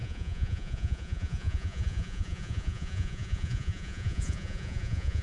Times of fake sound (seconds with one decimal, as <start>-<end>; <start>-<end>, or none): 0.0-5.2